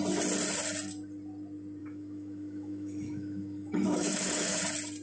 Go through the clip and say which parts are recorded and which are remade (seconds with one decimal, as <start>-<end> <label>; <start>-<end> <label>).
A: 0.0-1.8 recorded; 1.8-4.6 remade; 4.6-5.0 recorded